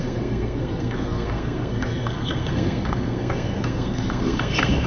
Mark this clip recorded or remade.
remade